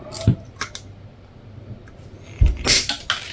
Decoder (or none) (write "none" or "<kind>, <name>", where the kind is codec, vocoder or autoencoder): none